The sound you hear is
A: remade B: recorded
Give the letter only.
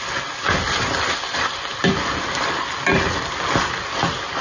B